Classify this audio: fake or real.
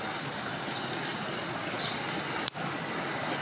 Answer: real